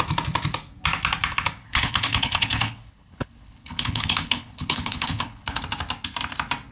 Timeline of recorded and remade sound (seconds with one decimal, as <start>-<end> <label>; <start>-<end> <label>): 0.0-1.6 recorded; 1.6-5.6 remade; 5.6-6.7 recorded